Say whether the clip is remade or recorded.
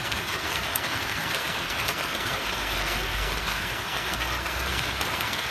remade